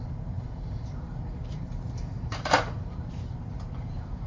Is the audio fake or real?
fake